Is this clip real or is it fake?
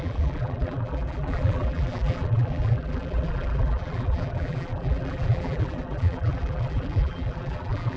fake